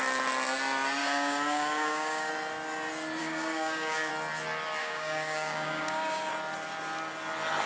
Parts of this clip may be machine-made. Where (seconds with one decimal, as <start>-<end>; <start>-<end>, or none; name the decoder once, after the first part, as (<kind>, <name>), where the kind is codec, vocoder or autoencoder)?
1.0-2.3 (codec, DAC); 3.2-4.1; 4.8-6.3